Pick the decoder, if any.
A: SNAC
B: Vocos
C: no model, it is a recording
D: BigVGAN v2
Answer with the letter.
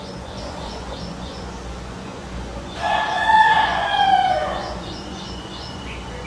B